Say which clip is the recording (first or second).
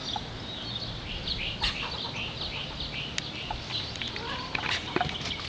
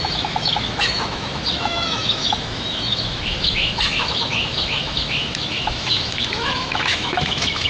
first